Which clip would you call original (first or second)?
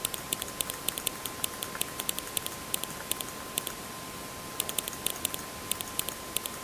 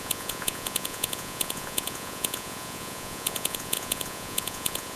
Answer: first